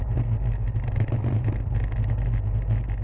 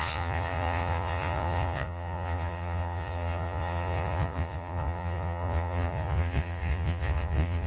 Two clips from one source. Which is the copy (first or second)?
second